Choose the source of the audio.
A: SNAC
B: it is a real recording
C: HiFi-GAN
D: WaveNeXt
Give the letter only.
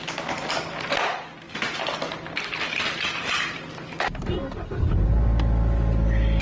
B